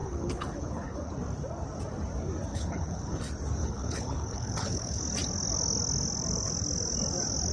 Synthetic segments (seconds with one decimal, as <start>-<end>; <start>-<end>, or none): 0.0-1.1; 2.5-3.2; 3.6-5.0